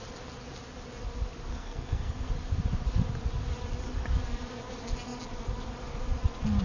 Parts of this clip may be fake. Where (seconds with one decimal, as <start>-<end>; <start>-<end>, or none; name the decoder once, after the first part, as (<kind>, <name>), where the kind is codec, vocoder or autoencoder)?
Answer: 1.5-2.3 (codec, SNAC)

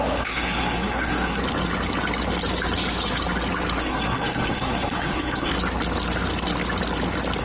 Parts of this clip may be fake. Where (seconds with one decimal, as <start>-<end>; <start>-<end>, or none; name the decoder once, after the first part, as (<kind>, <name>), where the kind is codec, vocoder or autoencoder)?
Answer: 0.0-1.4 (codec, SNAC); 3.8-5.5